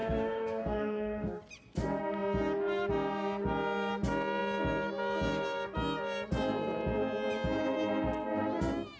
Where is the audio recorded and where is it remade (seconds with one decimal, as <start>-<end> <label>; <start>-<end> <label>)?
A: 0.0-1.4 remade; 1.4-9.0 recorded